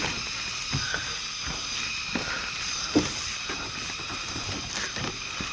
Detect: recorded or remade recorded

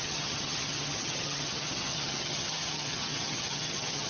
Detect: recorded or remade remade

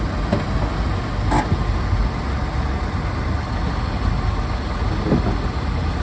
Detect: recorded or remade recorded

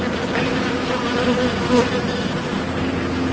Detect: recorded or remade recorded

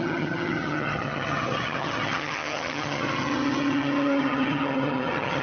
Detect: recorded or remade remade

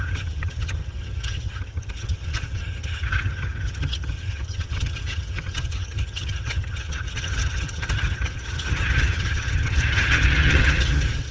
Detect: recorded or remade remade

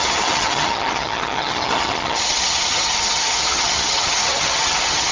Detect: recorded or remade remade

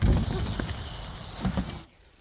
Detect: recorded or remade recorded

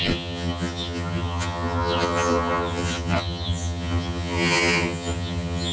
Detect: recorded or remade remade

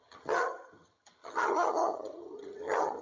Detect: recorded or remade remade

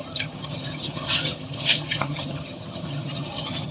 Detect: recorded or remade remade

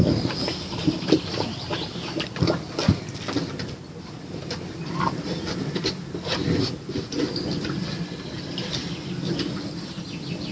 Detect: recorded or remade recorded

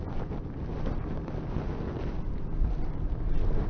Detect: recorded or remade recorded